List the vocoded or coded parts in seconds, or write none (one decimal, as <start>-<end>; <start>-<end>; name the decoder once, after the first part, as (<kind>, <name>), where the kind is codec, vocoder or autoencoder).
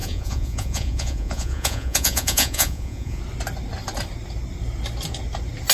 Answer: 0.0-3.2 (vocoder, Vocos)